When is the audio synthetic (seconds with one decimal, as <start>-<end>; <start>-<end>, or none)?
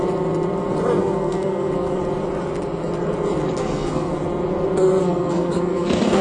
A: 1.0-2.0; 3.6-4.1; 5.0-6.2